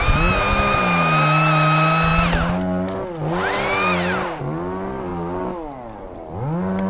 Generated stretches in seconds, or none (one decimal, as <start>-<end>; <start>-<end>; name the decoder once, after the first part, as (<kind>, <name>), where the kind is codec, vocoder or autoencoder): none